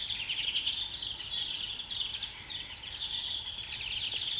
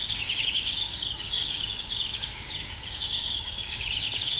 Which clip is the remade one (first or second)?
second